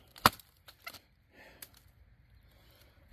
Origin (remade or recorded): recorded